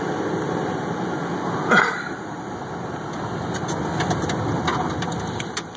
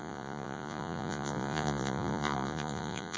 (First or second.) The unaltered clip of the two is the first